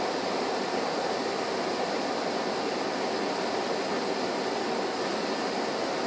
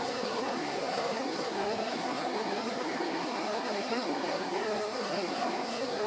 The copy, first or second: second